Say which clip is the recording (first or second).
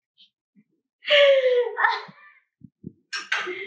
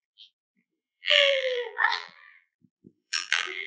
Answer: first